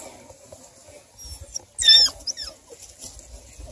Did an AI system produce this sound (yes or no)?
no